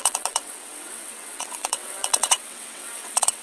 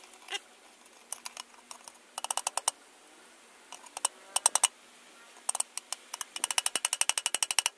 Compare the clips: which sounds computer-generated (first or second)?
first